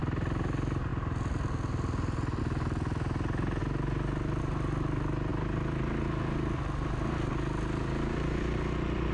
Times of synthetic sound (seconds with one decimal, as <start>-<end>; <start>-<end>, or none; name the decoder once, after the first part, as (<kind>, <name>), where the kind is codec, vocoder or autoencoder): none